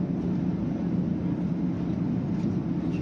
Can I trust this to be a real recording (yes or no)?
yes